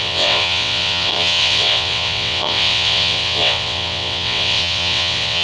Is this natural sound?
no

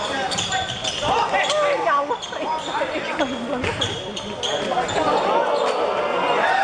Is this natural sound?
yes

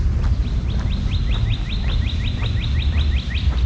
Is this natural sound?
yes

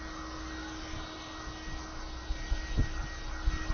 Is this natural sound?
yes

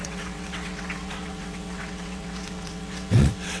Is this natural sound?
no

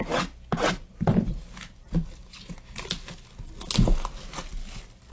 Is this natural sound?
yes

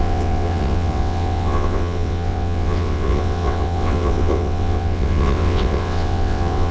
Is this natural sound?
no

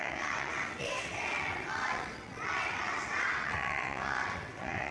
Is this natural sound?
no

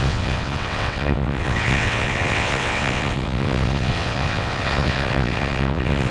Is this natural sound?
no